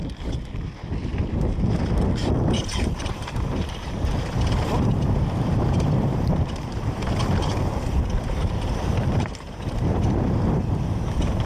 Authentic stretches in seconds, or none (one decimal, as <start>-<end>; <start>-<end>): 0.0-2.4